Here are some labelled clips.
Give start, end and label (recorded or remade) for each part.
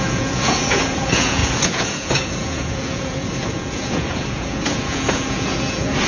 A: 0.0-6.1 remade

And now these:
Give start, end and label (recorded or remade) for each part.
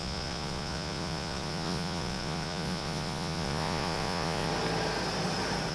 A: 0.0-4.5 remade; 4.5-5.7 recorded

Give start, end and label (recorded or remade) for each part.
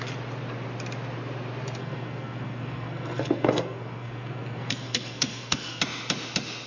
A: 0.0-1.8 recorded; 1.8-5.8 remade; 5.8-6.7 recorded